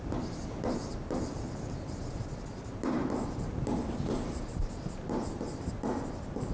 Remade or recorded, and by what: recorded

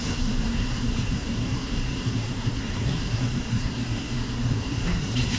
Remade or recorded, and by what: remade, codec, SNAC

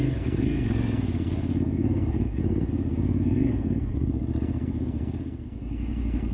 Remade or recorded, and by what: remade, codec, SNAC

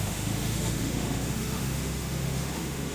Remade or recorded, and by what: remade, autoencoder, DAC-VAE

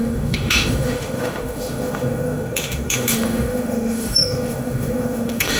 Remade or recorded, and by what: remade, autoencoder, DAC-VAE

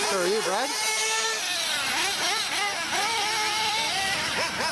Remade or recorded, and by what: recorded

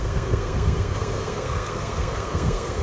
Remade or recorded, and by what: remade, codec, SNAC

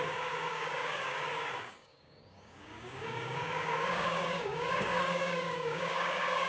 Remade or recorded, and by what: remade, codec, DAC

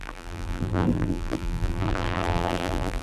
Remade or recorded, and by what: remade, vocoder, BigVGAN v2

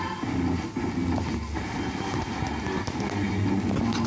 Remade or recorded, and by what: recorded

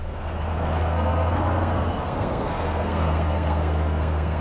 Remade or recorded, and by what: remade, codec, SNAC